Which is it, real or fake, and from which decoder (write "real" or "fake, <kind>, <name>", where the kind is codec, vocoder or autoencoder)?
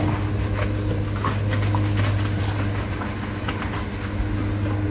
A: real